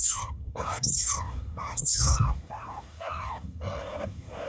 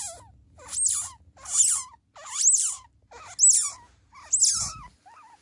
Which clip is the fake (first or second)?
first